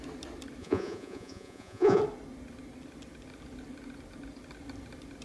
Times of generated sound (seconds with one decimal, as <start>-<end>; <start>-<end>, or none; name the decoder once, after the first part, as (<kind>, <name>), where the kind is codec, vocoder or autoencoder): 0.6-2.0 (vocoder, Vocos)